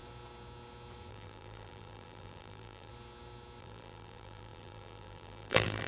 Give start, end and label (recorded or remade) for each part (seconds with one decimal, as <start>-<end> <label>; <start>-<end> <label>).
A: 0.0-1.1 recorded; 1.1-2.9 remade; 2.9-3.6 recorded; 3.6-5.9 remade